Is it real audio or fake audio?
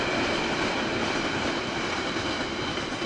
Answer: real